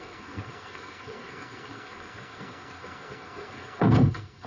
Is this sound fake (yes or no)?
yes